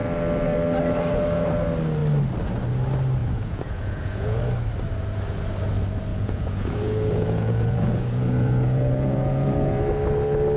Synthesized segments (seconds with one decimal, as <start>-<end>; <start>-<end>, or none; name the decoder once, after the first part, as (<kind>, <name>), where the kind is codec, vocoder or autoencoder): 3.2-4.4 (vocoder, Vocos); 6.1-9.8